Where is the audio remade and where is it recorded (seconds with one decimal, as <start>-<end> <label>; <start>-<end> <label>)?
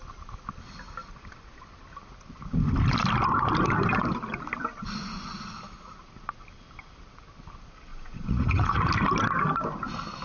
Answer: 0.0-7.9 recorded; 7.9-8.8 remade; 8.8-10.2 recorded